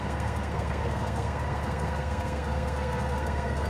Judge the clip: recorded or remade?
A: remade